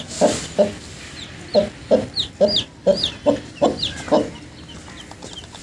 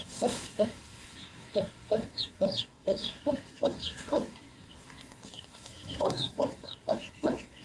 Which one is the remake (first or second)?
second